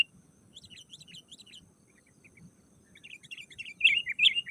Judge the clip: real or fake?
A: real